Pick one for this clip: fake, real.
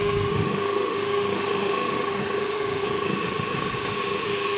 fake